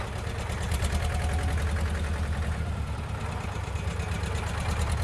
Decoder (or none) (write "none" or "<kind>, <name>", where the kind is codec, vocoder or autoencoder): none